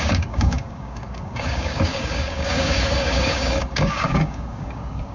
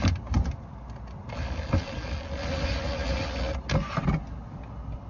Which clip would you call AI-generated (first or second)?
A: first